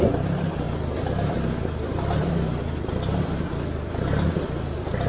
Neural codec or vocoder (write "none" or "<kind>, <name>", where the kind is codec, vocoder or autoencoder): none